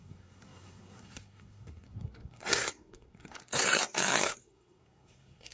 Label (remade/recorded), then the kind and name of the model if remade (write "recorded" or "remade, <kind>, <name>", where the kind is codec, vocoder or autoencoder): remade, codec, SNAC